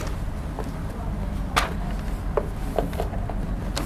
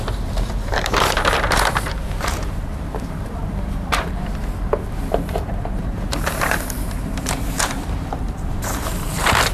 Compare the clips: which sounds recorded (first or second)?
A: first